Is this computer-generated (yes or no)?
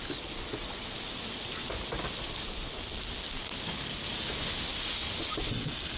no